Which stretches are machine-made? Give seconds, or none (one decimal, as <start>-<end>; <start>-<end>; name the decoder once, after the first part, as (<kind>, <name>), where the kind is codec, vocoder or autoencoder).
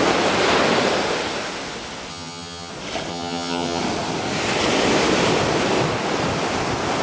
2.1-2.7 (vocoder, HiFi-GAN); 3.1-3.8